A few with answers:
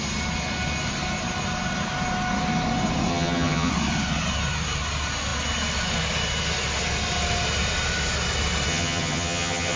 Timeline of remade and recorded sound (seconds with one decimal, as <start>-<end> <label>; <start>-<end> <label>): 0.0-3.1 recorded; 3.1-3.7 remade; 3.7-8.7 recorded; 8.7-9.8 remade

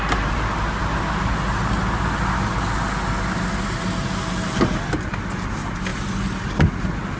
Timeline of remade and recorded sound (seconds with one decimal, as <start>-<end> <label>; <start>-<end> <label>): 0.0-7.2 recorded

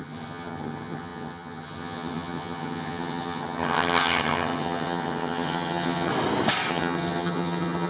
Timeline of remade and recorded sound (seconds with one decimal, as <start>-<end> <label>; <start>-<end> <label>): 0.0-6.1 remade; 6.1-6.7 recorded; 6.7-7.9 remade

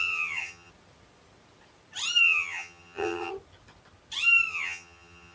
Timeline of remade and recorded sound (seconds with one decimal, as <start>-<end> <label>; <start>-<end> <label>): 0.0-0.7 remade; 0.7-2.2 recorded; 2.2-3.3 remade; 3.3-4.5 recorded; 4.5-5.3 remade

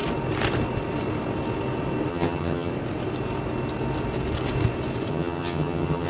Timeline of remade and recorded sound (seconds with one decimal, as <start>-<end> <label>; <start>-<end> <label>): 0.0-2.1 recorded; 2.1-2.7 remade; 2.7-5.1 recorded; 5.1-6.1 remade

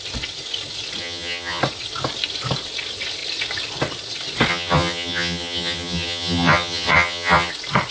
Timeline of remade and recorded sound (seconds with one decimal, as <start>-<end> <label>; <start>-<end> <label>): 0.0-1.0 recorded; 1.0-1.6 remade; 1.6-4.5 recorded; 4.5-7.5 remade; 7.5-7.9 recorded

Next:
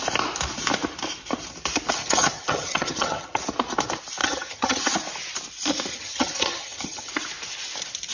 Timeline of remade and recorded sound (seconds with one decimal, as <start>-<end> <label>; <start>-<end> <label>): 0.0-2.0 recorded; 2.0-3.4 remade; 3.4-4.2 recorded; 4.2-4.8 remade; 4.8-5.9 recorded; 5.9-7.1 remade; 7.1-8.1 recorded